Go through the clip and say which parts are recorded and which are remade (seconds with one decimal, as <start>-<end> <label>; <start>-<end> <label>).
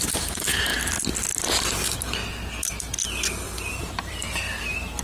0.0-0.7 remade; 0.7-3.7 recorded; 3.7-5.0 remade